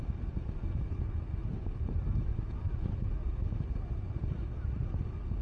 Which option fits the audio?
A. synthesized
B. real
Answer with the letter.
B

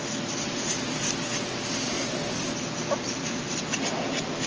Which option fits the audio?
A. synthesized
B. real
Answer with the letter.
B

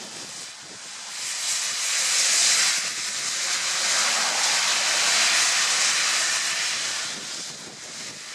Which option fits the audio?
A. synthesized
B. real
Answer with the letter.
B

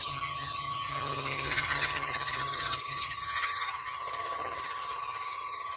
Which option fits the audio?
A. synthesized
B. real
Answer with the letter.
A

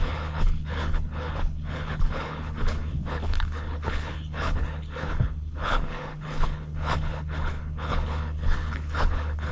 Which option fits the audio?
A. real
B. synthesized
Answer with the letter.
B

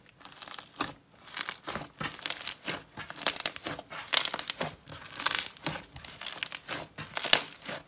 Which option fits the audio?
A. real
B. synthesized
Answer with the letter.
A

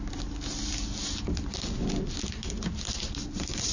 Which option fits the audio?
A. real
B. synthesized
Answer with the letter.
A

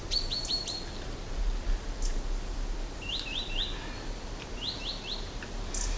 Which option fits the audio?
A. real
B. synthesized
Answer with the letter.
A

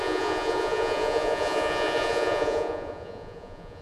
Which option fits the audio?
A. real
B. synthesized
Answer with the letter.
B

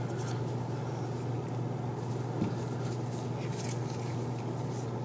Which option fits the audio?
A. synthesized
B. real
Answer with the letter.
B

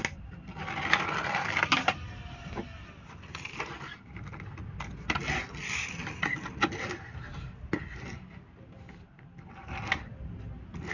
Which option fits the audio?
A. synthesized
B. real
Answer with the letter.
B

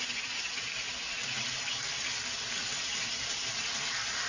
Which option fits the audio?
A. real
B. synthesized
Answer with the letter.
A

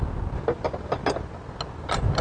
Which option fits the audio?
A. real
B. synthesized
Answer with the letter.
A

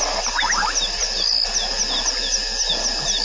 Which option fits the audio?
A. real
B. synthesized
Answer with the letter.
A